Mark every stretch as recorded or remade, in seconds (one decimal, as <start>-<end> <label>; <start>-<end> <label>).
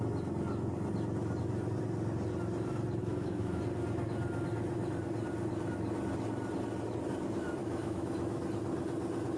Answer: 0.0-3.0 recorded; 3.0-3.6 remade; 3.6-7.6 recorded; 7.6-8.4 remade; 8.4-9.4 recorded